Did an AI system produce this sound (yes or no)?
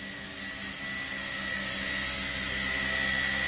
no